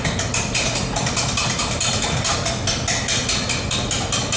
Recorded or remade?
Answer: recorded